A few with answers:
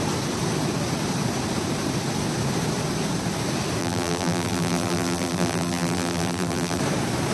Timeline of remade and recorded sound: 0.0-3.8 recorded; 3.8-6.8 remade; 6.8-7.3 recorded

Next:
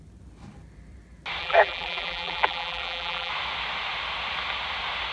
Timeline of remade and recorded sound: 0.0-1.4 recorded; 1.4-3.3 remade; 3.3-5.1 recorded

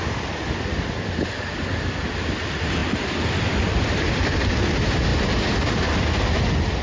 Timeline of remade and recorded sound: 0.0-2.8 recorded; 2.8-3.5 remade; 3.5-6.8 recorded

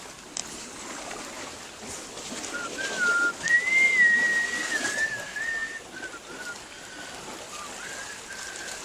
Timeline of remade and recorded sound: 0.0-0.4 recorded; 0.4-3.1 remade; 3.1-8.8 recorded

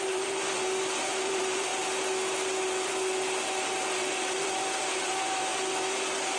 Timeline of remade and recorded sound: 0.0-1.7 remade; 1.7-3.7 recorded; 3.7-6.4 remade

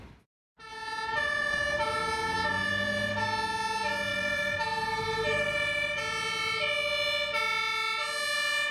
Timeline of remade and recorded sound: 0.0-4.1 recorded; 4.1-6.0 remade; 6.0-8.7 recorded